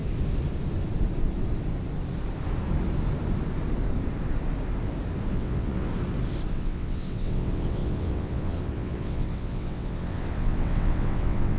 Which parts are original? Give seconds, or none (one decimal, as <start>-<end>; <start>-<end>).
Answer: 0.0-5.3; 5.9-6.5

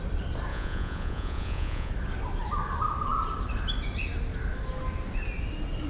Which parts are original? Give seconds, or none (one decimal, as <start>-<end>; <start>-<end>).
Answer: 0.0-0.5; 1.9-5.9

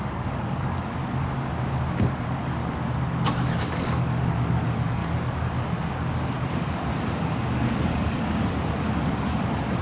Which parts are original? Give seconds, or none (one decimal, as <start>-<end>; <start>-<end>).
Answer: 1.0-2.1; 2.6-3.6

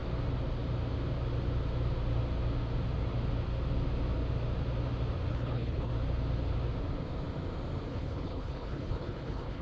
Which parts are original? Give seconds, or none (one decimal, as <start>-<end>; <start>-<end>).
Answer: 0.0-5.3; 5.9-7.9

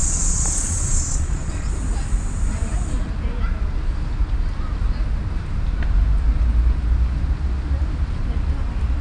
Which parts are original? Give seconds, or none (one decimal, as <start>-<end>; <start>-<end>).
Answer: 1.7-9.0

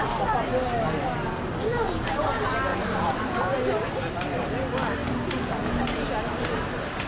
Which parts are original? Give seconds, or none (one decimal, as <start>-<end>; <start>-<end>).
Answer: 0.0-7.1

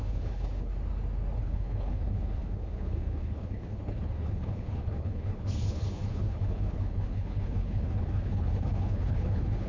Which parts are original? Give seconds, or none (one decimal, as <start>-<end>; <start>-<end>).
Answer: 0.7-1.4